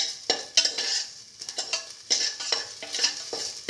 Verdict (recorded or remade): recorded